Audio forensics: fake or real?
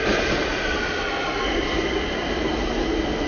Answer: real